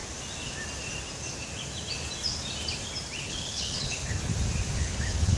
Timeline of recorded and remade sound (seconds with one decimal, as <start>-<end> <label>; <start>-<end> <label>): 0.0-3.2 recorded; 3.2-4.3 remade; 4.3-4.8 recorded; 4.8-5.4 remade

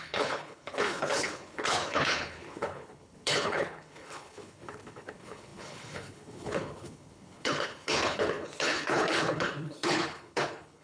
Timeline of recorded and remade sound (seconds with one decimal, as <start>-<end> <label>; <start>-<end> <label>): 0.0-10.8 remade

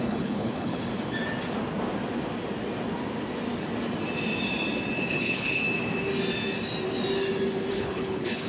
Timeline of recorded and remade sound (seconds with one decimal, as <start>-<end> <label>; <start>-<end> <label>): 0.0-0.9 remade; 0.9-5.1 recorded; 5.1-5.6 remade; 5.6-7.7 recorded; 7.7-8.5 remade